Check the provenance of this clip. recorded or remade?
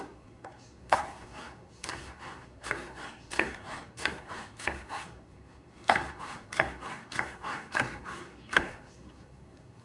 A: remade